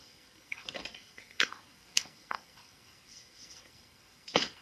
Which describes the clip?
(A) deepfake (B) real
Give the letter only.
A